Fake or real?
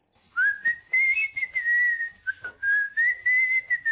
real